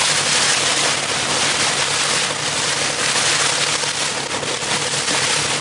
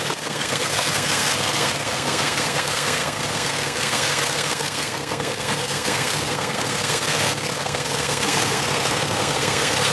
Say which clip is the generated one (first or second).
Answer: second